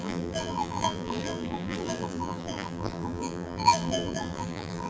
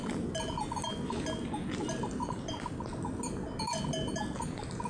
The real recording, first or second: second